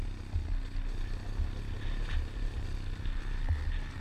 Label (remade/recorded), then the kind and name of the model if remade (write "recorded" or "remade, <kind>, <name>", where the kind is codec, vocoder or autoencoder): recorded